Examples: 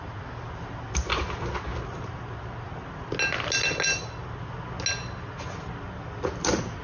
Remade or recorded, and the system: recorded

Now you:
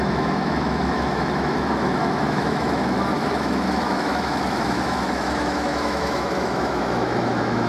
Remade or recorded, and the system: remade, autoencoder, DAC-VAE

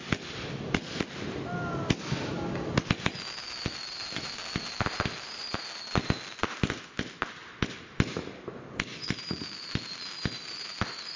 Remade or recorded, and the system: recorded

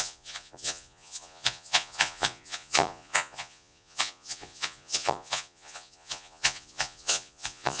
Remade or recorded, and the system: remade, vocoder, Vocos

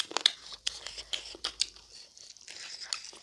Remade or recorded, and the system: recorded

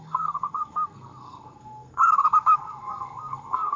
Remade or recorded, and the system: remade, codec, SNAC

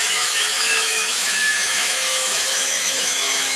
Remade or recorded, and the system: remade, autoencoder, DAC-VAE